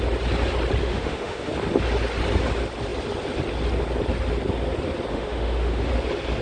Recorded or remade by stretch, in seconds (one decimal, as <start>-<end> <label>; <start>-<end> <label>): 0.0-0.8 recorded; 0.8-1.5 remade; 1.5-5.1 recorded; 5.1-5.9 remade; 5.9-6.4 recorded

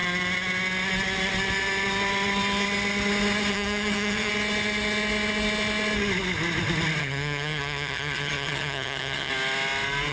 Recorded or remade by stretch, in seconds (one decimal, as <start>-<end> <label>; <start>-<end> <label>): 0.0-3.5 recorded; 3.5-4.3 remade; 4.3-7.0 recorded; 7.0-9.3 remade; 9.3-10.1 recorded

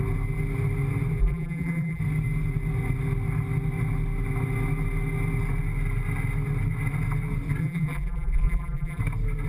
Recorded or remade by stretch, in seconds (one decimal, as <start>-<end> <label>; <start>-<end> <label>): 0.0-1.2 recorded; 1.2-2.0 remade; 2.0-7.6 recorded; 7.6-9.0 remade; 9.0-9.5 recorded

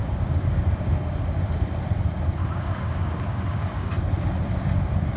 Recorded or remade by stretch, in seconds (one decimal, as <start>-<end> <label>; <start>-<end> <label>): 0.0-0.7 remade; 0.7-2.4 recorded; 2.4-3.9 remade; 3.9-5.2 recorded

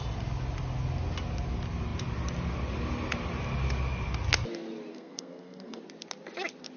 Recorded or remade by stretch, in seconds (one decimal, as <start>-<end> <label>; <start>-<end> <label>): 0.0-4.9 recorded; 4.9-5.8 remade; 5.8-6.8 recorded

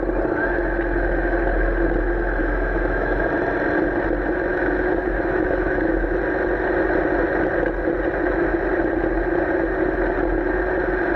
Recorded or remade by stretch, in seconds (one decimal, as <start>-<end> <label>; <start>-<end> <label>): 0.0-2.4 recorded; 2.4-3.3 remade; 3.3-4.5 recorded; 4.5-6.2 remade; 6.2-11.2 recorded